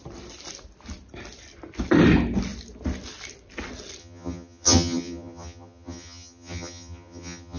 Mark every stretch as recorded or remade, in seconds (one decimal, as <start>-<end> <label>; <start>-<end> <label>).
0.0-4.0 recorded; 4.0-7.6 remade